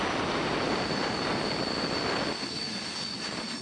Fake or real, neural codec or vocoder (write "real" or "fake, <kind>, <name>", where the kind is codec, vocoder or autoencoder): real